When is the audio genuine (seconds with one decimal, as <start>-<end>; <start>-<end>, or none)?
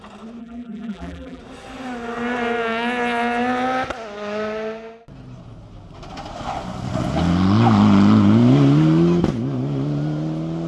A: 0.0-0.4; 1.4-10.7